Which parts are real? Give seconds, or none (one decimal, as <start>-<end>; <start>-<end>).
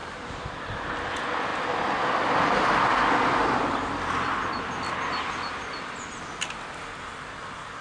0.0-7.8